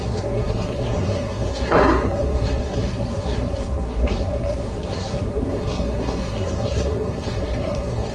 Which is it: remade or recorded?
remade